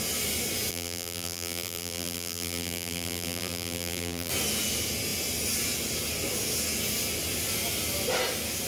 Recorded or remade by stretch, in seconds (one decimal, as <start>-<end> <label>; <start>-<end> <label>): 0.0-0.7 recorded; 0.7-4.3 remade; 4.3-8.7 recorded

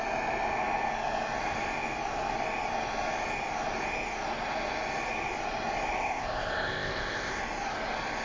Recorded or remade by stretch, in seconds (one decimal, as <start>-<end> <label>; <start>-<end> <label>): 0.0-6.0 recorded; 6.0-7.4 remade; 7.4-8.2 recorded